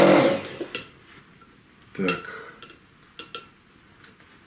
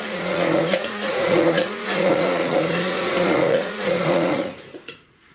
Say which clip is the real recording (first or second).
first